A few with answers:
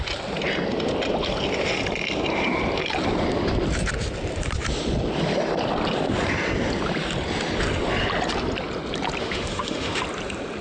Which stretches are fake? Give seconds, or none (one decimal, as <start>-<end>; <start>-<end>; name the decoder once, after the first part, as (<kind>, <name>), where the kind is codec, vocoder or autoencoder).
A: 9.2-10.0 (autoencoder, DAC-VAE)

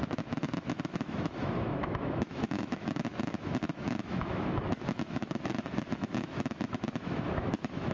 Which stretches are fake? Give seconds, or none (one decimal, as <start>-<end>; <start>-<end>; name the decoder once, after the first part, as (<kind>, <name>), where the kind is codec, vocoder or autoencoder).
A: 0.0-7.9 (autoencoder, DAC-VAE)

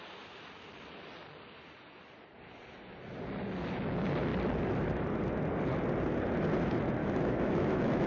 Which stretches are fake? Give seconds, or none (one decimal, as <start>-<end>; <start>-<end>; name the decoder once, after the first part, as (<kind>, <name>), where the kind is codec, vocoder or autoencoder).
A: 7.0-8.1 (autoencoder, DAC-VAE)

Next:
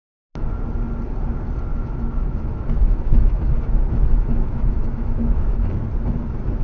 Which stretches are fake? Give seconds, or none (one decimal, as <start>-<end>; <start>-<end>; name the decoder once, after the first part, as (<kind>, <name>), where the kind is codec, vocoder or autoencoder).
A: 1.7-5.7 (autoencoder, DAC-VAE)

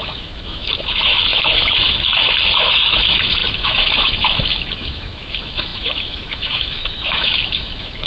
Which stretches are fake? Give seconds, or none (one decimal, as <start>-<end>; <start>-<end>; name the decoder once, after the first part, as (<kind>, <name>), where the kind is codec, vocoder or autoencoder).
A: 0.0-8.1 (autoencoder, DAC-VAE)

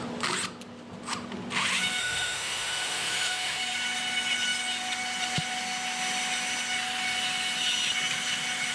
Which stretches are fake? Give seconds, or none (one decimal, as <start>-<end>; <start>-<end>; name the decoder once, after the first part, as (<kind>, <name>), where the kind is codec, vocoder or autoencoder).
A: 2.0-3.6 (autoencoder, DAC-VAE)

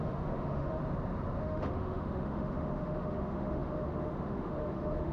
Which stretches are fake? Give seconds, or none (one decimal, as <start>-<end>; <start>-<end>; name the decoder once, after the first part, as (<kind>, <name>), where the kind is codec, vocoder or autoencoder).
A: 0.0-0.8 (autoencoder, DAC-VAE); 1.4-5.1